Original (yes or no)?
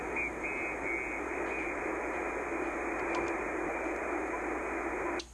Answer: yes